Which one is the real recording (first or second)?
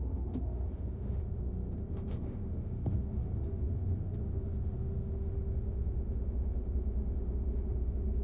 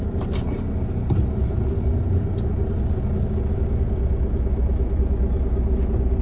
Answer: second